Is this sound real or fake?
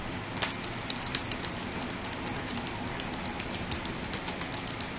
real